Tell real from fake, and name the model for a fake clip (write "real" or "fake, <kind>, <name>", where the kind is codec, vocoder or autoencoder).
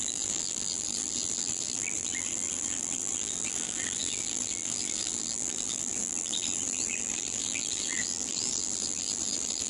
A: fake, vocoder, BigVGAN v2